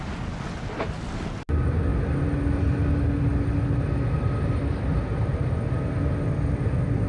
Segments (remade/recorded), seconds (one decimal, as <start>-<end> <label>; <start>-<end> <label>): 0.0-7.1 recorded